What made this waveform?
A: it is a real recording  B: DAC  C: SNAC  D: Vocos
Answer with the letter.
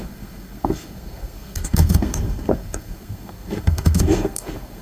C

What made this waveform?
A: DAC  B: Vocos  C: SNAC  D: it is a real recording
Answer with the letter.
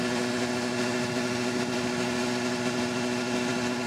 D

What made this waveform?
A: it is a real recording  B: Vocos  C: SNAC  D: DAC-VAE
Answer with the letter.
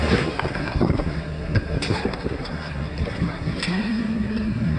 C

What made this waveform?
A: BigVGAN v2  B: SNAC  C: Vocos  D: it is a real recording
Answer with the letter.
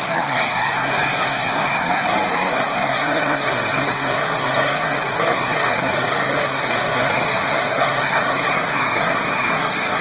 B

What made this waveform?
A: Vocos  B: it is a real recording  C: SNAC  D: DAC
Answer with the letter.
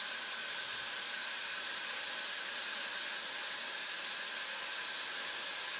B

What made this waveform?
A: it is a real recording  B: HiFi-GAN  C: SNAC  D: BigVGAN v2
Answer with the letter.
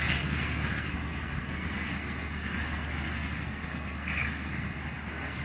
C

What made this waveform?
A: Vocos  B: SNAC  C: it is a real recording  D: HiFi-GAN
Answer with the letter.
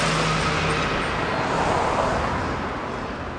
C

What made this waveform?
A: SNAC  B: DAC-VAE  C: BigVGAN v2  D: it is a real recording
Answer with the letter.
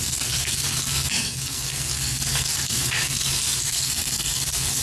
A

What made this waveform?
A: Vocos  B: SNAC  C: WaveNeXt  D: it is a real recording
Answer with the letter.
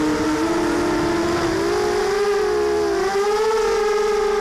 D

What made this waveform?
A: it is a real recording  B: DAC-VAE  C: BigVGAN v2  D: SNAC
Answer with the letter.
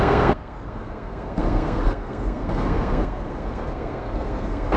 D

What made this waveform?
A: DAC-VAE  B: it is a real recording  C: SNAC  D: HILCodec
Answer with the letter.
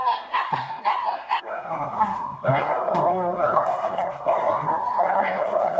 C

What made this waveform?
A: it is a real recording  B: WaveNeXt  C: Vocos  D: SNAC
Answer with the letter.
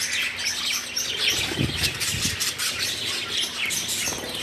A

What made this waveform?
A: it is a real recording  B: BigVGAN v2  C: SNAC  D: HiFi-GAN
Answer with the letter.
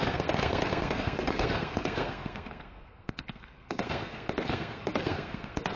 C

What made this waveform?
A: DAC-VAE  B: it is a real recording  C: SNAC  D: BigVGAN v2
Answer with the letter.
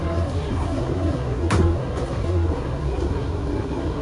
C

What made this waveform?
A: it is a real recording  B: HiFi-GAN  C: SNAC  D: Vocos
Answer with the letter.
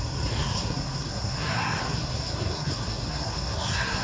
C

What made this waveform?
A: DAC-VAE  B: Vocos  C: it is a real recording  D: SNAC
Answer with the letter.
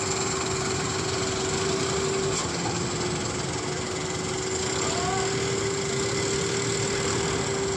C